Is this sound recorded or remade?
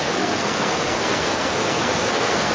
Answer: remade